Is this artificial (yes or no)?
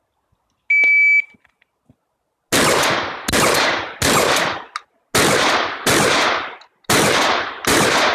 no